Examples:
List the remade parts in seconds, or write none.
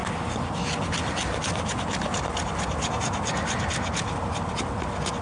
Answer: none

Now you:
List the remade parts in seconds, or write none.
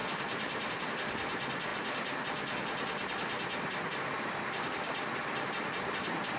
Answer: none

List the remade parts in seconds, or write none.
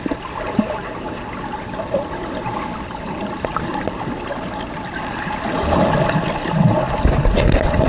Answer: none